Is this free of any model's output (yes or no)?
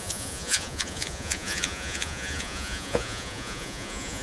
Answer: no